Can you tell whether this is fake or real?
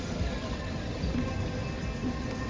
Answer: real